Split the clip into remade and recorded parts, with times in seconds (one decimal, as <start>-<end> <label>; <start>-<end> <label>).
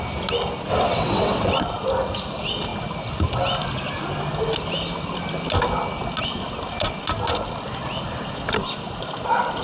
0.0-0.7 recorded; 0.7-1.6 remade; 1.6-9.6 recorded